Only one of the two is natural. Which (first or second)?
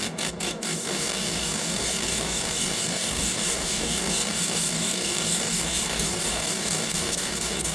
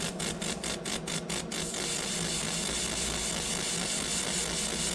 second